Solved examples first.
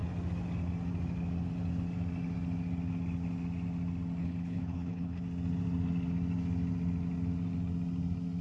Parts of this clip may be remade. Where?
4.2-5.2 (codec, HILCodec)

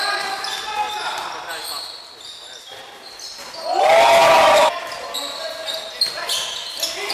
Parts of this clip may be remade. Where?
none